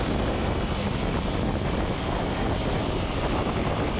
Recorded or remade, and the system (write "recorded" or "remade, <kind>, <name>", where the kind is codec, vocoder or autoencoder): recorded